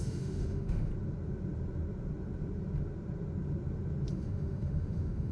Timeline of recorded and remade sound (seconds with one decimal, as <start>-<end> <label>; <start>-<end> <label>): 0.0-0.9 remade; 0.9-4.1 recorded; 4.1-5.3 remade